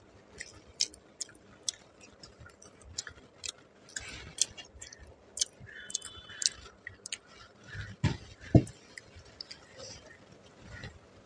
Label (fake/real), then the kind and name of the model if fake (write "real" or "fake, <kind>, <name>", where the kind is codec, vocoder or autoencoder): real